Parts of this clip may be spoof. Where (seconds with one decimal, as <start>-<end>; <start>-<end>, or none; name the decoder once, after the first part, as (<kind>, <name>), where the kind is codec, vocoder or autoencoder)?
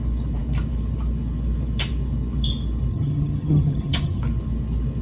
2.9-4.2 (vocoder, HiFi-GAN)